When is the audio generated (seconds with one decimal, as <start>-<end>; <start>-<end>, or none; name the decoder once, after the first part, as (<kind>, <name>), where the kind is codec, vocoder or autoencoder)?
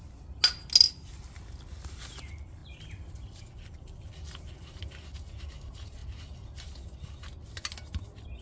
none